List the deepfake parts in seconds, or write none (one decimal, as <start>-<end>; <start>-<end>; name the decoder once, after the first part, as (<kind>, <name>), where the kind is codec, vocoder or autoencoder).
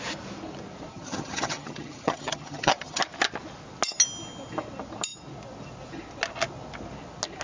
0.9-3.0 (vocoder, HiFi-GAN)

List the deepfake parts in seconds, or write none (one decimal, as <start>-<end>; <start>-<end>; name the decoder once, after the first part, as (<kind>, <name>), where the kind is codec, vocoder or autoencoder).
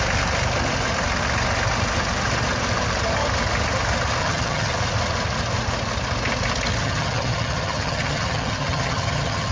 4.2-4.7 (vocoder, HiFi-GAN); 6.8-9.5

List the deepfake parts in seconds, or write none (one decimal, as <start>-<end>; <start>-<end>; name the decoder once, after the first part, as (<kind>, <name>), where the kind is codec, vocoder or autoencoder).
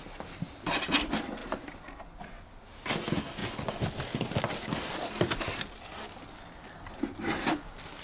none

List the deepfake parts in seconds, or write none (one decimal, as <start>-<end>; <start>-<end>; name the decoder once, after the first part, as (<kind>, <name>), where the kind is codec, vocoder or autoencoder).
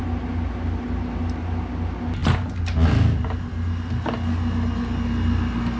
none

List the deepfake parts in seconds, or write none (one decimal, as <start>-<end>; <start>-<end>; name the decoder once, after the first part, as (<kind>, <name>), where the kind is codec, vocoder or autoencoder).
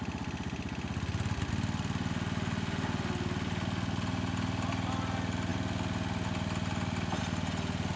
none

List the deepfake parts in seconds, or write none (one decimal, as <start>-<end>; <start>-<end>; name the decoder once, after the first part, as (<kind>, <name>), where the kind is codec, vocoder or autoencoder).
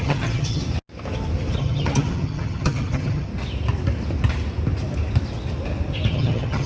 0.0-0.6 (vocoder, HiFi-GAN); 1.6-3.3; 6.1-6.7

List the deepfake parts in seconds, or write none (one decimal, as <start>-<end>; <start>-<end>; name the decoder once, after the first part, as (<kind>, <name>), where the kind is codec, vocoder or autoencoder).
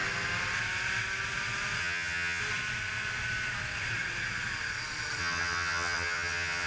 1.8-2.4 (vocoder, HiFi-GAN); 5.2-6.7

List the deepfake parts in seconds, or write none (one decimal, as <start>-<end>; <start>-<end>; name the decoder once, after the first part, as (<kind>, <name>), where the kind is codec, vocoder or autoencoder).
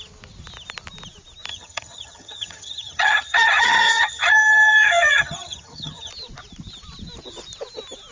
1.5-6.1 (vocoder, HiFi-GAN)